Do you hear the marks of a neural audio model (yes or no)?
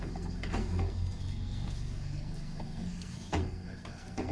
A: yes